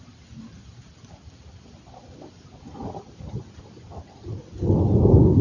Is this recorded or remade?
recorded